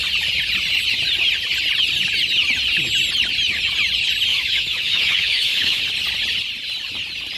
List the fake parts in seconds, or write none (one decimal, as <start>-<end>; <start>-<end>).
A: 4.3-5.8